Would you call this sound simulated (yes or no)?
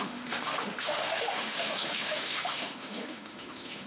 yes